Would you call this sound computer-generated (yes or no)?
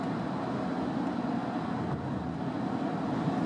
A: no